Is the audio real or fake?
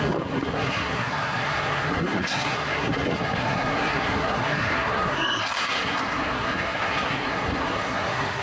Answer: fake